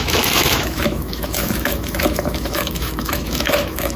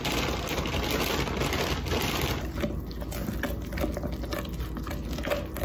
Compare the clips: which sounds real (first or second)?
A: second